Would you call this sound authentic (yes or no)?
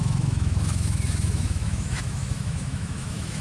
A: no